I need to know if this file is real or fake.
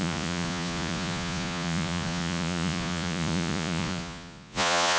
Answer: fake